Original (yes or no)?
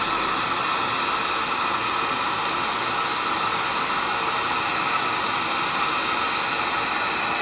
yes